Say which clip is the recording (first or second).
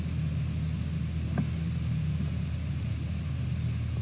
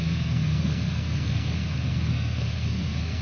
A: first